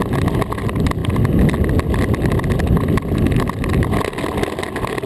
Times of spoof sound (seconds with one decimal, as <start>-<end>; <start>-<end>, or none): none